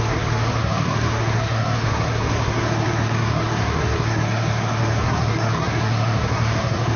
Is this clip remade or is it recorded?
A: remade